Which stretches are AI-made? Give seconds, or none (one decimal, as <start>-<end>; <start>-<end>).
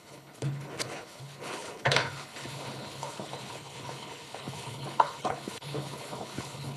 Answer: 0.0-6.8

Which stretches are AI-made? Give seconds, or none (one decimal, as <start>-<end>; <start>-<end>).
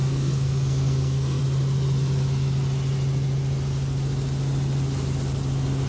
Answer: 0.0-1.4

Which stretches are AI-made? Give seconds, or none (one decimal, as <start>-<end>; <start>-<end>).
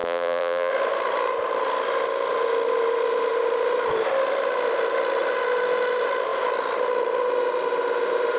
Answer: 0.0-0.7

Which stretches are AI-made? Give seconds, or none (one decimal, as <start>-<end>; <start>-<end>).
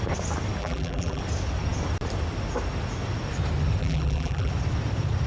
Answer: 0.6-1.2; 3.8-4.5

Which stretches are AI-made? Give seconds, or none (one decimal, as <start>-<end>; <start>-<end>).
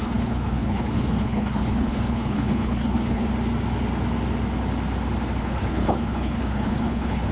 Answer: 0.0-3.3; 5.4-7.3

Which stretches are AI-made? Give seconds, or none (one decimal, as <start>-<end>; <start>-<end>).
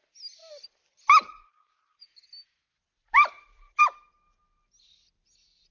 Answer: none